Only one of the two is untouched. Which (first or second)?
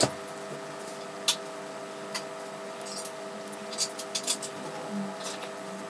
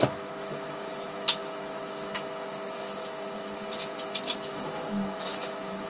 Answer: first